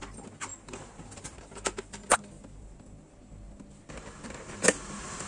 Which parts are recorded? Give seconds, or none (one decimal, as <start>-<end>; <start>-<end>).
0.0-5.3